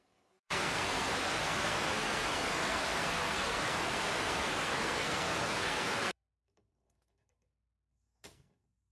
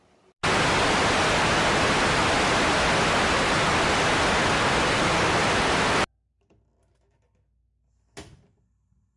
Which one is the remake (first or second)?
first